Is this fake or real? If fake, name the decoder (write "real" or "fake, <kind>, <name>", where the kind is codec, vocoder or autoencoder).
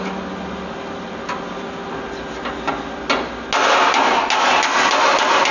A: real